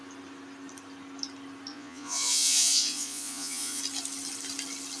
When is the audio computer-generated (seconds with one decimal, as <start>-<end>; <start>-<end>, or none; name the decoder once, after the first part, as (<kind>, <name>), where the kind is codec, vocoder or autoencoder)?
1.7-3.8 (vocoder, Vocos)